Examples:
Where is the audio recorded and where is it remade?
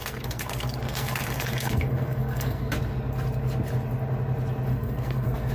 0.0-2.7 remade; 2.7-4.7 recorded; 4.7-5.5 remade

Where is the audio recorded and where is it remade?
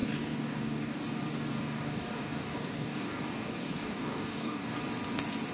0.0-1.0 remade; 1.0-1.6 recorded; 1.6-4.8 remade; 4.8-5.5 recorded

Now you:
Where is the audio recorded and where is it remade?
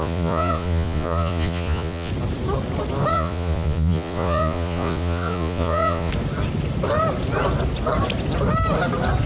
0.0-2.1 remade; 2.1-3.1 recorded; 3.1-6.1 remade; 6.1-9.3 recorded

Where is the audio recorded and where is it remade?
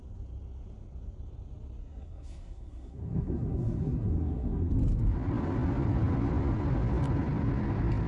0.0-1.8 recorded; 1.8-4.7 remade; 4.7-8.1 recorded